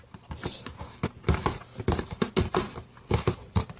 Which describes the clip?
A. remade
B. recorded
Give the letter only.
A